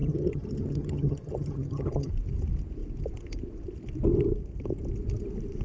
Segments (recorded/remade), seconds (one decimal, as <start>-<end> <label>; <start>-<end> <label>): 0.0-2.1 remade; 2.1-5.6 recorded